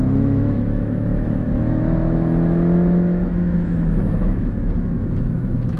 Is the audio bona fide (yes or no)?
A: no